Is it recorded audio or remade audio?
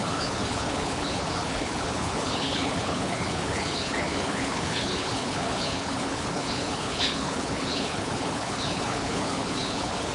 remade